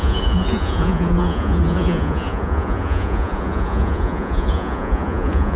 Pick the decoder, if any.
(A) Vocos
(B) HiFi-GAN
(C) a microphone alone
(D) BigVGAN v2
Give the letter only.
A